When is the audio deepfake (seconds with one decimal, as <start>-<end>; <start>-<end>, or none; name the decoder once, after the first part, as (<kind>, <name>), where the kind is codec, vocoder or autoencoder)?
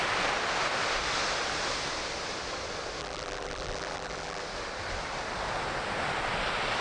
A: 3.0-4.4 (vocoder, BigVGAN v2)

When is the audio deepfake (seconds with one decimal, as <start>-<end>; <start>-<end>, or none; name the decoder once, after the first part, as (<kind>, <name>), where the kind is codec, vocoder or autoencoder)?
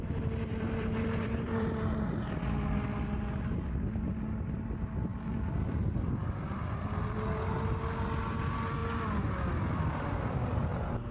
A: 0.5-2.4 (vocoder, BigVGAN v2); 5.1-6.5